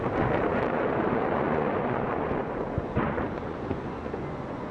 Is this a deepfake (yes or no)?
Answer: yes